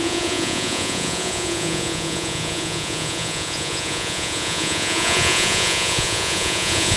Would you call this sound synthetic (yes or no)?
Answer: yes